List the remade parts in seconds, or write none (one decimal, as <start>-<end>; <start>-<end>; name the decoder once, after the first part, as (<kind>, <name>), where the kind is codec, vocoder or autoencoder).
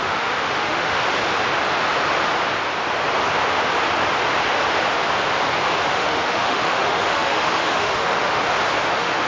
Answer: 0.0-1.0 (autoencoder, DAC-VAE); 5.9-8.4; 8.9-9.3